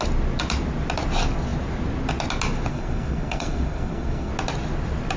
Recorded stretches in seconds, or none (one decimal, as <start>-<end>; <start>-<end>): 0.0-2.7; 4.3-5.2